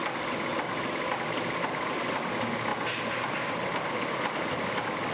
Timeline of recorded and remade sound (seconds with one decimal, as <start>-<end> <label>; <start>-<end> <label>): 0.0-2.7 recorded; 2.7-4.2 remade; 4.2-5.1 recorded